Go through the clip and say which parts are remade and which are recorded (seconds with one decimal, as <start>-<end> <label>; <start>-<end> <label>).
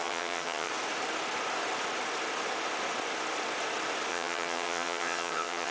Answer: 0.0-0.7 remade; 0.7-4.1 recorded; 4.1-5.7 remade